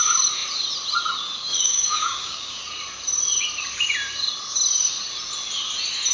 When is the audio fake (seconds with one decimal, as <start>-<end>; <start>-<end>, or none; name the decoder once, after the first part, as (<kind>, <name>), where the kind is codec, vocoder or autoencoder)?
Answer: 1.5-2.6 (codec, DAC)